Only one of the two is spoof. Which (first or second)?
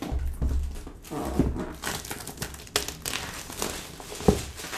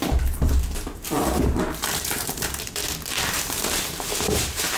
second